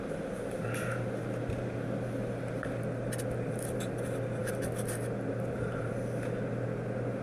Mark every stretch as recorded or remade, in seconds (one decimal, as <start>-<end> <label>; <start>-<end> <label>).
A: 0.0-4.4 recorded; 4.4-5.9 remade; 5.9-7.2 recorded